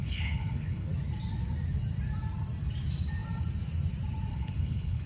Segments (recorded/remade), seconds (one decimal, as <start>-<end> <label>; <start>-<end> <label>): 0.0-0.9 remade; 0.9-4.3 recorded; 4.3-5.1 remade